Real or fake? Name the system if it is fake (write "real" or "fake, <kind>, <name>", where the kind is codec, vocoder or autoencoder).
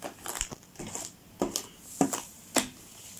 real